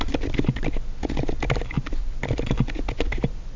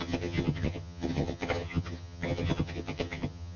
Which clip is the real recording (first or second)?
first